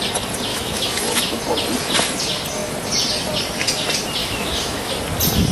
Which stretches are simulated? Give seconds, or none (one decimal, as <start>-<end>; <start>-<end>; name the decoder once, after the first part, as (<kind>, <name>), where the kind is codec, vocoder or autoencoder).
0.5-1.4 (autoencoder, DAC-VAE); 4.2-4.9